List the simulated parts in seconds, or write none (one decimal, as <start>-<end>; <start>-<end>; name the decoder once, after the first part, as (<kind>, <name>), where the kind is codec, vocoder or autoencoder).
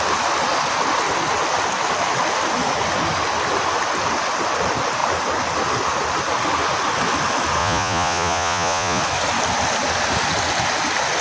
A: 7.6-9.0 (vocoder, Vocos)